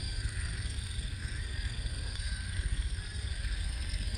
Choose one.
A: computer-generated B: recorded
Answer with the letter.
A